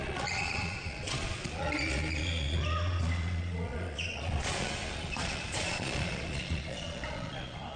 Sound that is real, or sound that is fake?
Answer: fake